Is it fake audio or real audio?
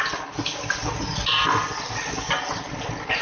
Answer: real